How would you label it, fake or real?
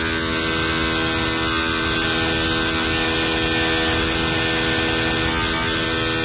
real